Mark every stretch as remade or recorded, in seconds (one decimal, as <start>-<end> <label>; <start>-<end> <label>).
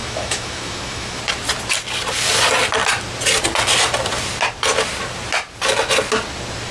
0.0-1.2 remade; 1.2-6.7 recorded